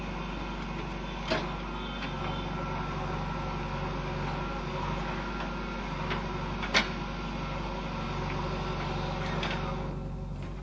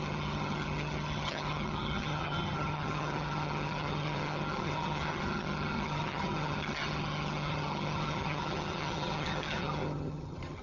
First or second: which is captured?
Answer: first